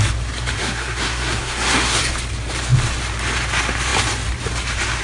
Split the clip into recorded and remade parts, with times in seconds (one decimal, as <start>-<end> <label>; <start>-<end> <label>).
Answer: 0.0-0.6 recorded; 0.6-2.0 remade; 2.0-5.0 recorded